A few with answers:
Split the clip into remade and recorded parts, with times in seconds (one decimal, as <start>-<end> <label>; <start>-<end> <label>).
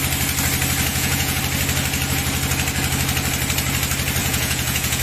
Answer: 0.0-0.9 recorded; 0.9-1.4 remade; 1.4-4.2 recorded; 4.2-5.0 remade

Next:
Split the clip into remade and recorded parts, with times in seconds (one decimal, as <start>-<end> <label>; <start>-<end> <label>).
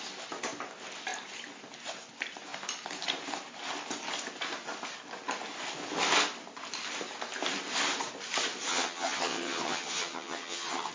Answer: 0.0-8.7 recorded; 8.7-10.9 remade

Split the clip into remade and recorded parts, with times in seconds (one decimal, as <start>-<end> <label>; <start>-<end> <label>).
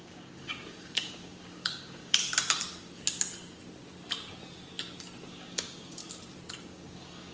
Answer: 0.0-2.2 remade; 2.2-5.3 recorded; 5.3-6.0 remade; 6.0-6.7 recorded; 6.7-7.3 remade